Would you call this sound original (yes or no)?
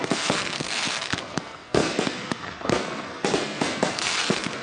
no